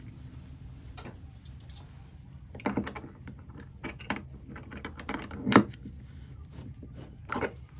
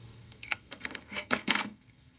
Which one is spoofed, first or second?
second